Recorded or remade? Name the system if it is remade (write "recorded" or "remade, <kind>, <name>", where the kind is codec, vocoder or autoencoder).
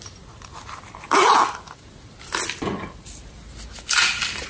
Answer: recorded